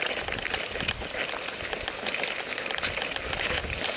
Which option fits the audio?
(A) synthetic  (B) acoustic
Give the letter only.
B